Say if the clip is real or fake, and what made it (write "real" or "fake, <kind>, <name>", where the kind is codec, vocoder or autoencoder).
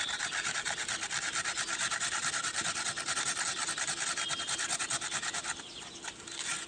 real